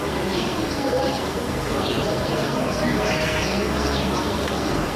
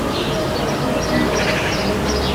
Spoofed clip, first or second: first